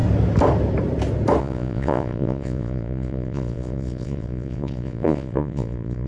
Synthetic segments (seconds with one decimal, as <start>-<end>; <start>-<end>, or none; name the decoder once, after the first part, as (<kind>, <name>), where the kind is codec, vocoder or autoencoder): 1.4-6.1 (vocoder, Vocos)